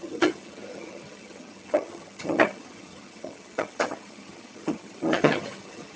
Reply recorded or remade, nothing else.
remade